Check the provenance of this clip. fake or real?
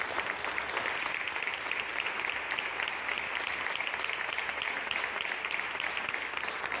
real